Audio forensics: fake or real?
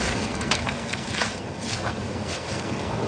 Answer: fake